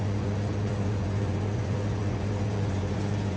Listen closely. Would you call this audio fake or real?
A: fake